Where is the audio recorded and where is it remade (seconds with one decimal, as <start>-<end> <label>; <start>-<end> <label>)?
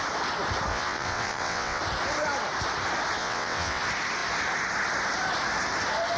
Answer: 0.0-0.7 recorded; 0.7-1.8 remade; 1.8-3.2 recorded; 3.2-3.8 remade; 3.8-6.2 recorded